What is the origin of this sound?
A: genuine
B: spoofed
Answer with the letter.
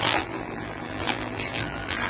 B